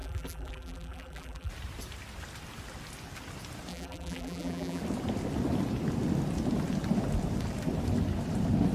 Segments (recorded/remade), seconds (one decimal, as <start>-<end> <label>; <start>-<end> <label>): 0.0-1.5 remade; 1.5-3.7 recorded; 3.7-4.8 remade; 4.8-8.7 recorded